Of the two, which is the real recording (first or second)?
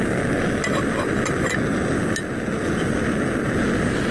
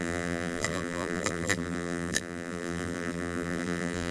first